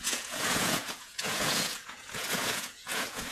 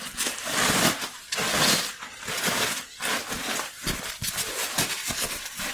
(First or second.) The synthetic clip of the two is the first